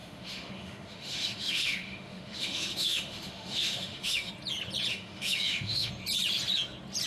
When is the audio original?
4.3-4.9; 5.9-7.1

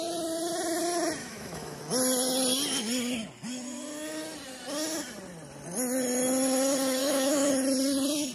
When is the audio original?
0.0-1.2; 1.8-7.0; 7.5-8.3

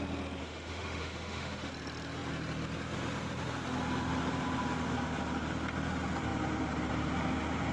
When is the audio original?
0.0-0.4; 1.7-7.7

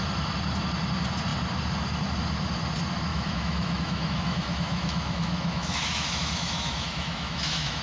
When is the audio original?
0.0-3.1

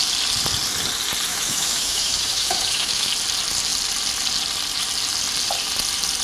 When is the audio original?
0.0-1.3; 3.1-6.2